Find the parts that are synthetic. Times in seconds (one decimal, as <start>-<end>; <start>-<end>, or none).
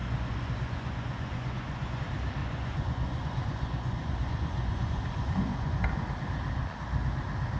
0.0-2.0; 2.4-5.7